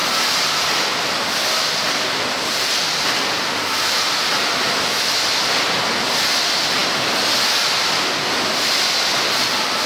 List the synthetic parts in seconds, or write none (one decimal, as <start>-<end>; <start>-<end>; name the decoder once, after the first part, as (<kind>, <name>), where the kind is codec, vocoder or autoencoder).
none

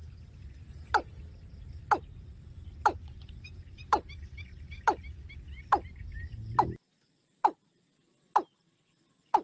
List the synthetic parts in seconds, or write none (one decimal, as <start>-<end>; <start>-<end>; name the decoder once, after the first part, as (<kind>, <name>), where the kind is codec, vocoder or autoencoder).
none

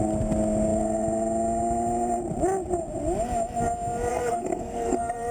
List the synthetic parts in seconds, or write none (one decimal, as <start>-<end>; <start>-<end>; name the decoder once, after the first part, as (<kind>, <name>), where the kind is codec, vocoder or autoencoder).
4.1-5.3 (codec, SNAC)

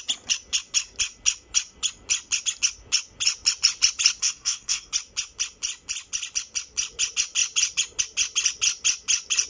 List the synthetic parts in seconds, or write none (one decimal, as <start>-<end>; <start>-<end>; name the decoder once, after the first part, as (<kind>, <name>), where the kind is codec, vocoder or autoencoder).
4.2-4.9 (codec, SNAC)

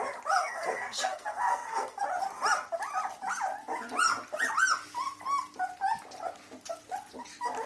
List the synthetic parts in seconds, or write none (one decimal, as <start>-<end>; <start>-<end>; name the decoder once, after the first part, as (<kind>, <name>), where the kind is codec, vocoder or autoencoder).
0.4-2.0 (codec, SNAC)

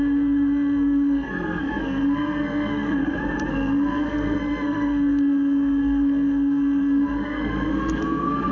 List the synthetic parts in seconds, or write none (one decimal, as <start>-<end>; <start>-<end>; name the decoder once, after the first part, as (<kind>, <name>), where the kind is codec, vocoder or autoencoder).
0.0-3.0 (codec, SNAC); 3.5-8.5

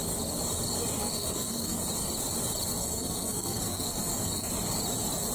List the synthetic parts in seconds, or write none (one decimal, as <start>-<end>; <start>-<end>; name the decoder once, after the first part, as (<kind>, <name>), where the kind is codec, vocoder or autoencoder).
1.0-1.8 (codec, SNAC); 2.8-4.5

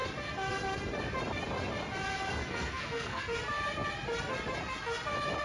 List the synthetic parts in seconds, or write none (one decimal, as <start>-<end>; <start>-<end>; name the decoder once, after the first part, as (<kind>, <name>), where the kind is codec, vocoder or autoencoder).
2.4-3.2 (codec, SNAC)